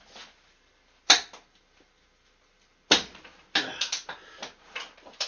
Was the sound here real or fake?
real